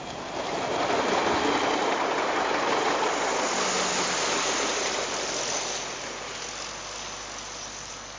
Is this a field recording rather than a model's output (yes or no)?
yes